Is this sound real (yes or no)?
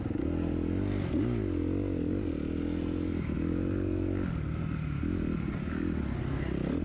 yes